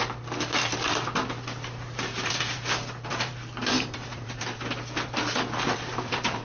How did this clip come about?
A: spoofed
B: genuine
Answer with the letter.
A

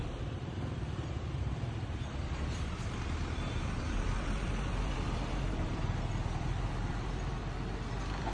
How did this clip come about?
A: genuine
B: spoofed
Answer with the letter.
B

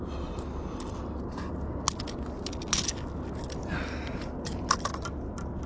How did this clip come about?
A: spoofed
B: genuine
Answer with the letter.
B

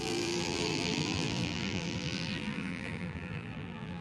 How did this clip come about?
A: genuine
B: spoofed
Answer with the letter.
B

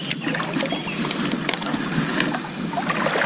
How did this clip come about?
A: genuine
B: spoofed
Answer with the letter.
A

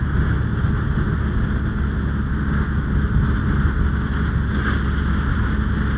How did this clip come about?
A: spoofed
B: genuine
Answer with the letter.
B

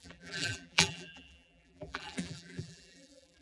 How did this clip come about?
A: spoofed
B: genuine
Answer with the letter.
A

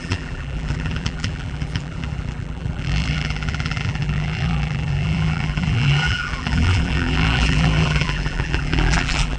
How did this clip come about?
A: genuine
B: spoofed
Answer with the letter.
B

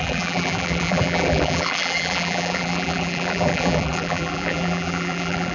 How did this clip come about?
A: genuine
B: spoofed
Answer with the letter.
B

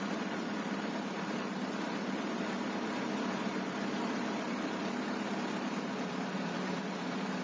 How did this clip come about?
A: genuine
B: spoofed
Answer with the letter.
B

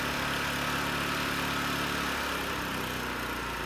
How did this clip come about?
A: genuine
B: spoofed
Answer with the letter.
A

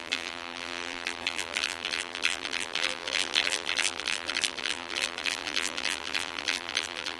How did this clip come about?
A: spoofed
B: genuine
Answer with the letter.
A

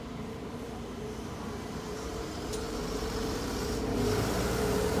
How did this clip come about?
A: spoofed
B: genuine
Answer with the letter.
A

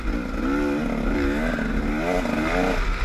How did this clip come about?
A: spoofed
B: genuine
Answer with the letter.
B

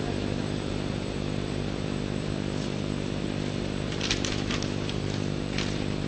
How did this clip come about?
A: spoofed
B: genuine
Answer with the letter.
A